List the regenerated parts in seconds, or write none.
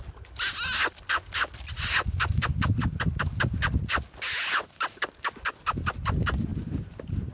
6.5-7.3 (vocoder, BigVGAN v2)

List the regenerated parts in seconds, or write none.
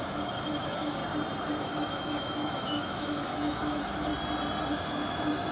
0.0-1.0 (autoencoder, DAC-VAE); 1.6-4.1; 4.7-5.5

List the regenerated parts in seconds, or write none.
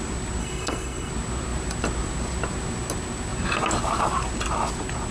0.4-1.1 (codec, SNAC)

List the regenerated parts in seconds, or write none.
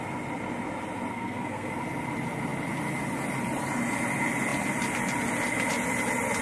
1.1-1.7 (codec, SNAC)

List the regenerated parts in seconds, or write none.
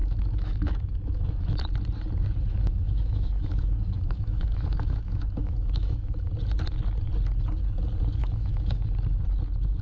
0.0-1.6 (autoencoder, DAC-VAE); 2.5-6.3; 8.2-8.9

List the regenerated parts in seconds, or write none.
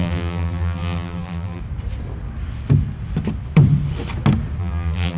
0.0-1.6 (vocoder, BigVGAN v2); 4.6-5.2